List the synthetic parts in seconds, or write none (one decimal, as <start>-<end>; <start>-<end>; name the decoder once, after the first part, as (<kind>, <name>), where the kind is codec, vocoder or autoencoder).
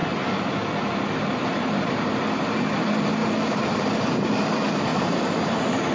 0.0-5.9 (vocoder, BigVGAN v2)